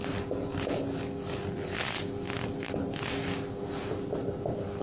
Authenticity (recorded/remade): recorded